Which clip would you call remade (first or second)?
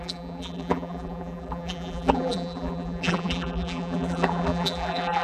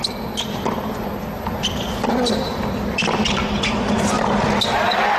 first